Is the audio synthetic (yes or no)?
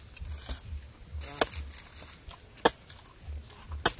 no